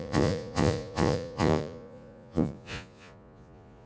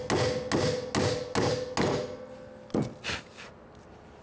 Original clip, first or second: second